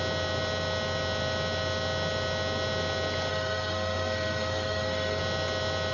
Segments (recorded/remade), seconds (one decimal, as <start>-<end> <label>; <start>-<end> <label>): 0.0-3.3 recorded; 3.3-5.2 remade; 5.2-5.9 recorded